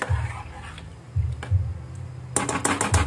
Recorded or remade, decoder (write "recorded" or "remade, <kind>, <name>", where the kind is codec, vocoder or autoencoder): recorded